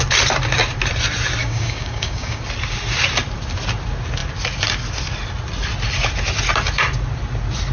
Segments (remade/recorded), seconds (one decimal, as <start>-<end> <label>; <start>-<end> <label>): 0.0-1.4 recorded; 1.4-2.4 remade; 2.4-7.7 recorded